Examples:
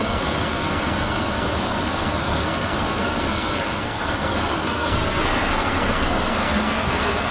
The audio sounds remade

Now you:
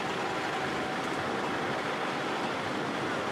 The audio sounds recorded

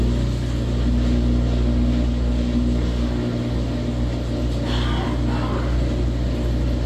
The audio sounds recorded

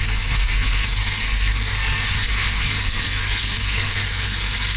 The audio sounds remade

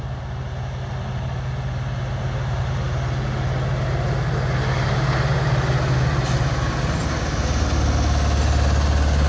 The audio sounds recorded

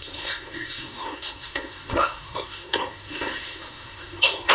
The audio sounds remade